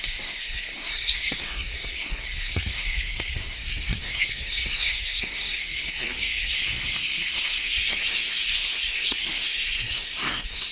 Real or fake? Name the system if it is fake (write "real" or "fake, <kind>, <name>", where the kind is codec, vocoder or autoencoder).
fake, codec, SNAC